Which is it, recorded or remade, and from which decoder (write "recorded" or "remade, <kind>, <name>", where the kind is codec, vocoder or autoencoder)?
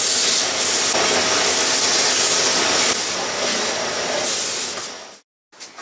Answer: recorded